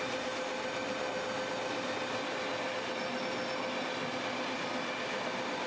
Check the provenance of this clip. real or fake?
real